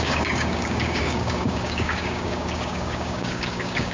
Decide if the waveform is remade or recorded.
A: remade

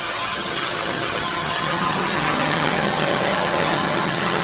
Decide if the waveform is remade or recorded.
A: remade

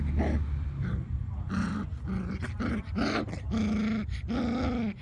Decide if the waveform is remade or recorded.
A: recorded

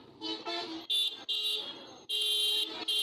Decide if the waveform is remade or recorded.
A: recorded